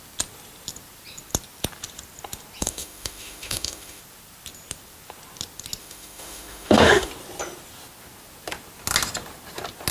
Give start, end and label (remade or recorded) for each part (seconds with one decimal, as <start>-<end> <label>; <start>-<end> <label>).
0.0-2.6 recorded; 2.6-4.0 remade; 4.0-5.8 recorded; 5.8-7.1 remade; 7.1-9.9 recorded